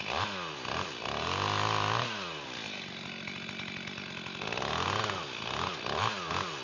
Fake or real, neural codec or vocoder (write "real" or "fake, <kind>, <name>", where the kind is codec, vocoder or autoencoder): real